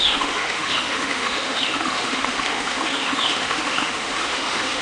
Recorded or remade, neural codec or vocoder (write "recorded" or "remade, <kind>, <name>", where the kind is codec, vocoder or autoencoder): remade, autoencoder, DAC-VAE